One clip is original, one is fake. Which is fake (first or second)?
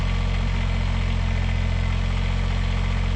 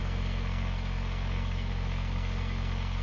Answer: second